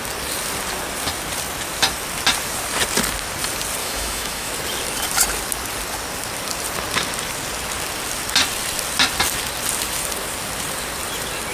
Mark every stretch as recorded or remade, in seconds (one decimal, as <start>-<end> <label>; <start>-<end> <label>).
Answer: 0.0-3.8 recorded; 3.8-4.5 remade; 4.5-11.5 recorded